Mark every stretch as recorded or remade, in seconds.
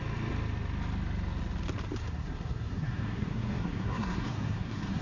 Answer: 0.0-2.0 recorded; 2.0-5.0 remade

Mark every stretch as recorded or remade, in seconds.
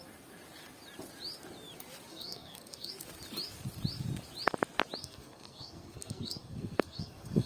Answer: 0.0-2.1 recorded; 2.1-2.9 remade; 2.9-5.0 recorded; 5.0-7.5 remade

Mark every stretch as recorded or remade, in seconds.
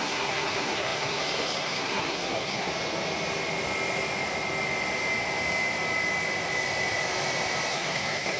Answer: 0.0-2.7 remade; 2.7-7.7 recorded; 7.7-8.4 remade